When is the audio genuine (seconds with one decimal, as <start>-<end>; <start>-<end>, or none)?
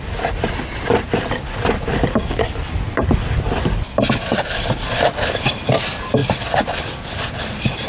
0.0-7.9